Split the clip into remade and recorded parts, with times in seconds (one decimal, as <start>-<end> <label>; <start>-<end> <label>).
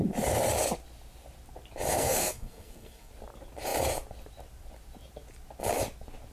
0.0-1.9 recorded; 1.9-3.1 remade; 3.1-6.3 recorded